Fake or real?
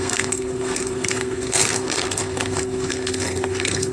fake